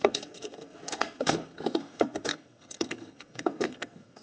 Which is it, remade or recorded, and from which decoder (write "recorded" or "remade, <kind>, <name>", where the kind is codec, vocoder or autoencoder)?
remade, codec, SNAC